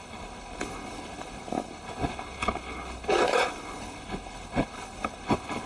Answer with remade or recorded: remade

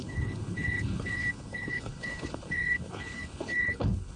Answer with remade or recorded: remade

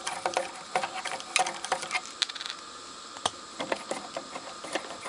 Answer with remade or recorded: recorded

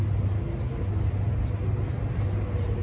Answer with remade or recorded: recorded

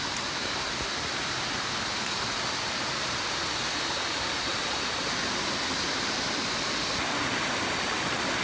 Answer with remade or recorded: recorded